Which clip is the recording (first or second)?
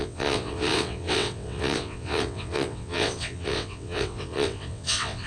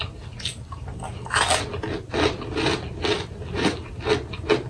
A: second